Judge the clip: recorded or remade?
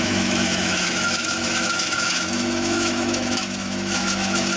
remade